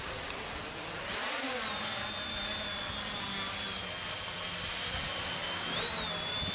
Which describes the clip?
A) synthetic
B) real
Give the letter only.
B